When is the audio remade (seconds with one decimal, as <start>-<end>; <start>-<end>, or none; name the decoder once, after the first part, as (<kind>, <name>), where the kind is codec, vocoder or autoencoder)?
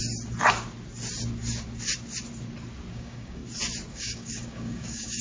2.9-3.4 (codec, DAC); 3.9-5.2